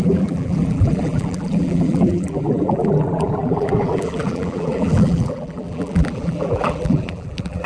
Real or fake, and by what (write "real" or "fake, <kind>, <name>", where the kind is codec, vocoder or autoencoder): fake, vocoder, BigVGAN v2